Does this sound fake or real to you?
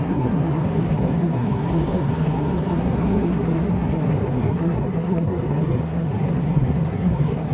fake